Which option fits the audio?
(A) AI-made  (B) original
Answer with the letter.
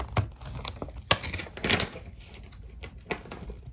B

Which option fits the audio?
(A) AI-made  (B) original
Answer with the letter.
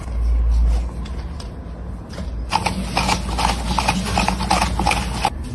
B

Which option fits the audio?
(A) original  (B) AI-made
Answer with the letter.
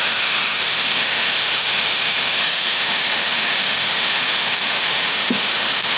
B